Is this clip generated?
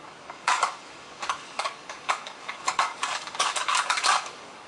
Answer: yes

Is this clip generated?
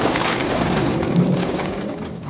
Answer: yes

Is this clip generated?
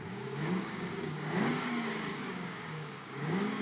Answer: yes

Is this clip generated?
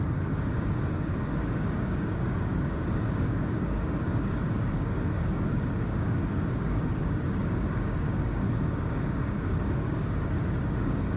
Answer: yes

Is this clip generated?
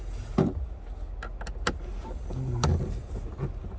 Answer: no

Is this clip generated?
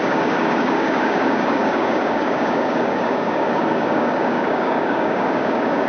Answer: yes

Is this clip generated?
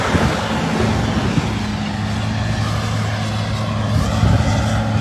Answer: no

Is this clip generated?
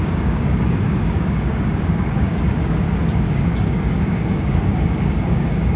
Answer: yes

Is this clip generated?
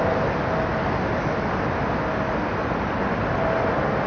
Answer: no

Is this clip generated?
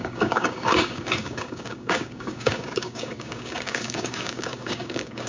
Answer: yes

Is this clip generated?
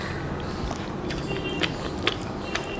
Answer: no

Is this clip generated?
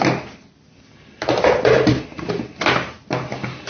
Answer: no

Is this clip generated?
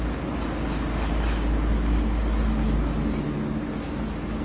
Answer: no